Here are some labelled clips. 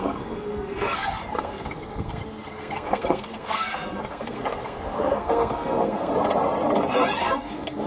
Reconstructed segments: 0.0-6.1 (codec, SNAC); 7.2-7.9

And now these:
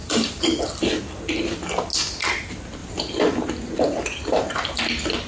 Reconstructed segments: 0.0-0.6 (vocoder, BigVGAN v2); 2.8-4.8

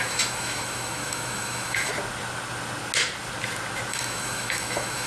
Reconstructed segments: 0.0-1.9 (autoencoder, DAC-VAE); 3.9-5.1